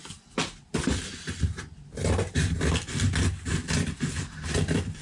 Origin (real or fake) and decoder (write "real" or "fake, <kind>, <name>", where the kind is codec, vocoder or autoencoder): real